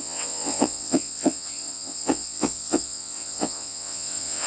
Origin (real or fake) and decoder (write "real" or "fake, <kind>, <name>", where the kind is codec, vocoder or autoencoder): fake, vocoder, WaveNeXt